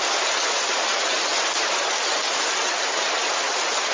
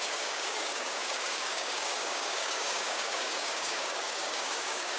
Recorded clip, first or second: first